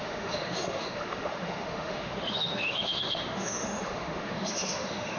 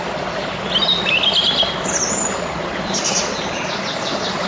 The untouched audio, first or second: second